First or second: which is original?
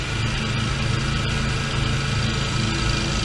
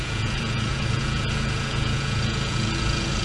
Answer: first